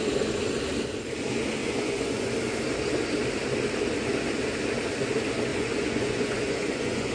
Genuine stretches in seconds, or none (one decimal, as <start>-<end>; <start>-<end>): 0.0-1.6; 2.3-5.5